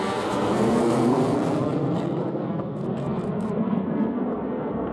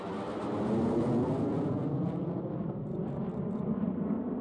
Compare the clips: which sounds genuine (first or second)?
second